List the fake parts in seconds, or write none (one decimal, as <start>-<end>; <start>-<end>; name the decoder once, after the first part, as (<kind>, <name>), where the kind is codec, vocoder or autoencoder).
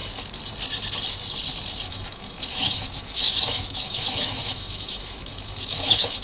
1.9-6.2 (autoencoder, DAC-VAE)